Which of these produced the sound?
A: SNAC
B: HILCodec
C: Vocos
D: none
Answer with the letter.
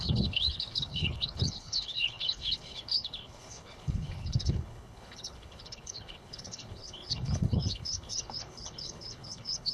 B